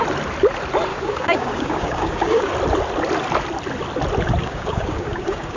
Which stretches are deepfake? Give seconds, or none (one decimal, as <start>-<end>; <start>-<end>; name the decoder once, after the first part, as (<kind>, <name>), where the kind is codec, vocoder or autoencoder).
0.9-2.5 (codec, DAC); 4.4-5.6